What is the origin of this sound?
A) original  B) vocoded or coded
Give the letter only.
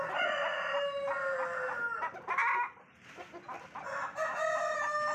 A